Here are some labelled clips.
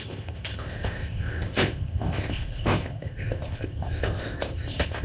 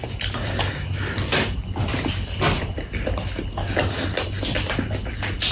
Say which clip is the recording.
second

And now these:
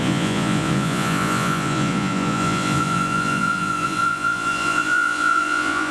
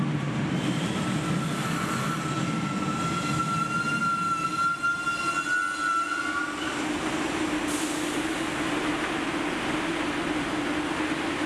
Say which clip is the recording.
second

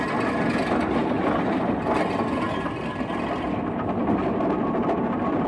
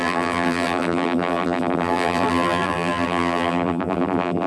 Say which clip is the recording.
first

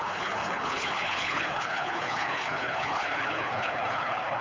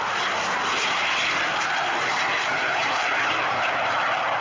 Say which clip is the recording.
second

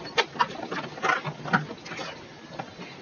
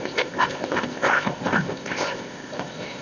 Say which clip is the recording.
first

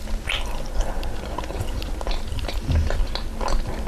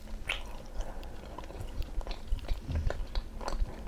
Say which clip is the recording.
first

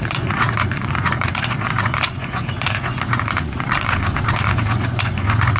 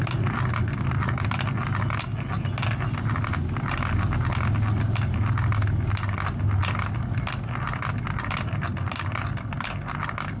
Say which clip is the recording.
second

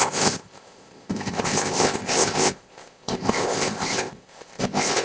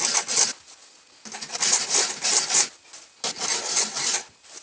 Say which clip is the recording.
second